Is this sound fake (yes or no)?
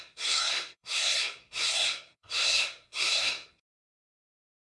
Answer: yes